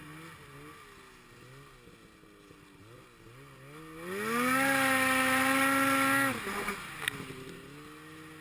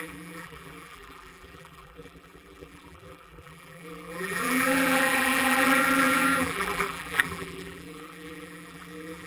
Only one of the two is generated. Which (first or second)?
second